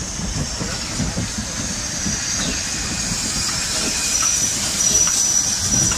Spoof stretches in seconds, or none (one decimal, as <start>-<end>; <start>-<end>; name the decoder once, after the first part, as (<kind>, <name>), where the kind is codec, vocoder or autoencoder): 4.5-5.1 (vocoder, BigVGAN v2)